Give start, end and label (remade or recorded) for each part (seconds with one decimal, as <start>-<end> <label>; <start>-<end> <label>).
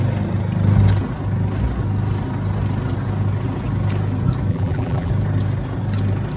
0.0-4.5 recorded; 4.5-5.1 remade; 5.1-6.4 recorded